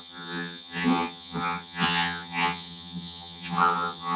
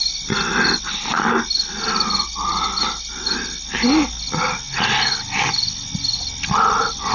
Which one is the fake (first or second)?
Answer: first